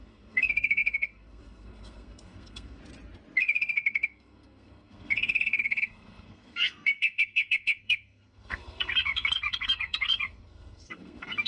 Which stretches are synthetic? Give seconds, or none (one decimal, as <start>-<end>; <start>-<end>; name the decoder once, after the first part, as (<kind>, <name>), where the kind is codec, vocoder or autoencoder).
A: 0.0-2.8 (codec, SNAC); 3.4-11.5